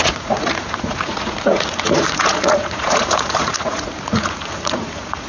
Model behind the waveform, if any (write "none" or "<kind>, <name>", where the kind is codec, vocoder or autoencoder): vocoder, Vocos